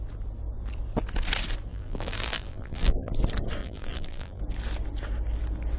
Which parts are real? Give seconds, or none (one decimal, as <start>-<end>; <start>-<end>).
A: 0.0-1.7; 3.1-3.6; 4.4-5.8